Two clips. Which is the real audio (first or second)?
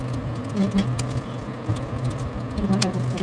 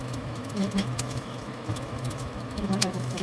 first